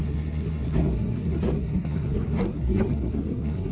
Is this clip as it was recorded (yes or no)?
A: no